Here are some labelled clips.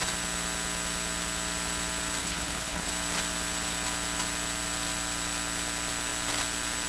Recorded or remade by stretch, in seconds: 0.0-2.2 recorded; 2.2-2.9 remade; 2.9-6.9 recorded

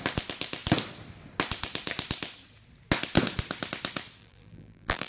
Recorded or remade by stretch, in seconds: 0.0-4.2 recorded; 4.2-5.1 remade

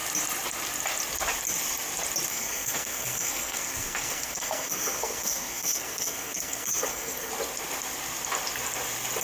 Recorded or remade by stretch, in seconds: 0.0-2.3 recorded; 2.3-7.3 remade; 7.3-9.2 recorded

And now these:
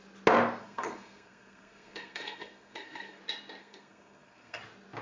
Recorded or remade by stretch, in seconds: 0.0-0.6 recorded; 0.6-3.2 remade; 3.2-3.6 recorded; 3.6-4.6 remade; 4.6-5.0 recorded

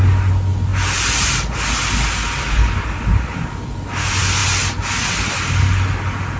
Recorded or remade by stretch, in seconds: 0.0-6.4 recorded

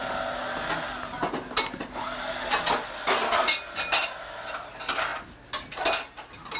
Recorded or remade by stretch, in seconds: 0.0-6.6 recorded

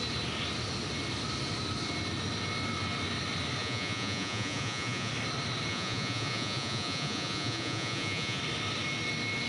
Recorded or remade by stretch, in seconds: 0.0-3.6 recorded; 3.6-5.1 remade; 5.1-5.7 recorded; 5.7-8.4 remade; 8.4-9.5 recorded

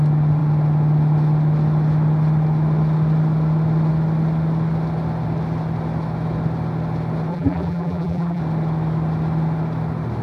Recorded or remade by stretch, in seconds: 0.0-7.3 recorded; 7.3-8.4 remade; 8.4-10.2 recorded